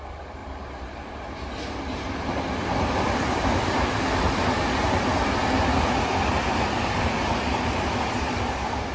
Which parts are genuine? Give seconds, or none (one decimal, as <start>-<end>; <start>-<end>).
0.0-0.4; 2.4-8.9